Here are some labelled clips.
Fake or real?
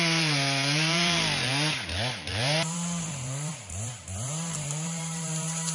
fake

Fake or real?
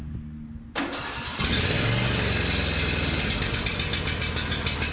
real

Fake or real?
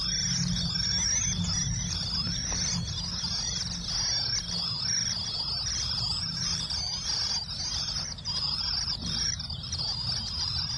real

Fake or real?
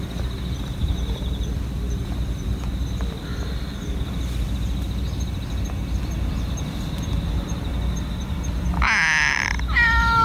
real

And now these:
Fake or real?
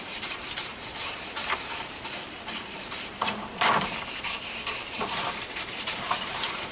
fake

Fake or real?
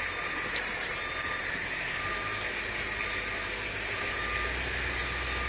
real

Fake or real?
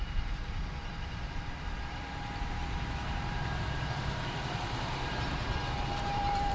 fake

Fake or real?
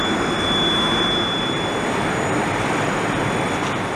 real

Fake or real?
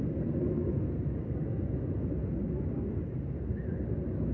real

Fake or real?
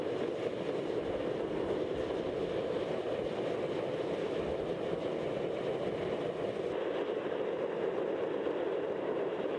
real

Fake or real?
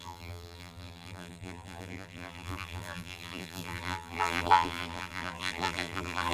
fake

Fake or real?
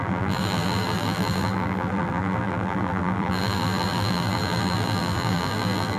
fake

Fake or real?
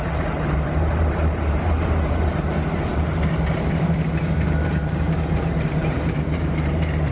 fake